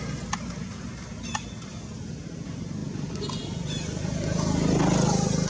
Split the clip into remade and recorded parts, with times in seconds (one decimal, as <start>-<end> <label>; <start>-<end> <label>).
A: 0.0-5.5 recorded